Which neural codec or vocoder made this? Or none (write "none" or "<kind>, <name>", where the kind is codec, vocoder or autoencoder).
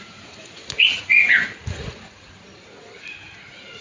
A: vocoder, Vocos